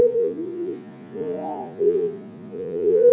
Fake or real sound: fake